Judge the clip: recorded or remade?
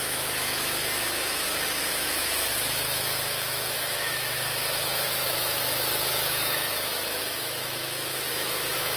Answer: remade